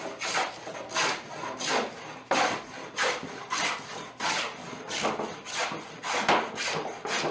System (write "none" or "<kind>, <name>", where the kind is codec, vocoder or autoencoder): none